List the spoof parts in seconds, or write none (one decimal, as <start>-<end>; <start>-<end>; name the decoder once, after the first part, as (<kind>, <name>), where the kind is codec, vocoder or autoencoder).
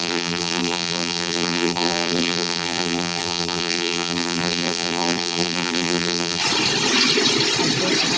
0.0-6.4 (vocoder, BigVGAN v2)